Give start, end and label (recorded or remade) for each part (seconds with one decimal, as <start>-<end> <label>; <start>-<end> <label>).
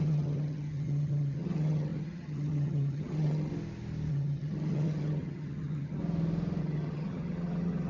0.0-3.5 remade; 3.5-4.1 recorded; 4.1-6.0 remade; 6.0-6.6 recorded; 6.6-7.9 remade